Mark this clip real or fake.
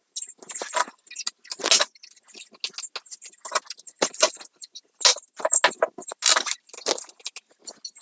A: real